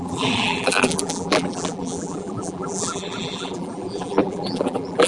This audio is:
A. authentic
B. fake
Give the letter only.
B